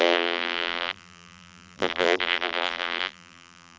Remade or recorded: remade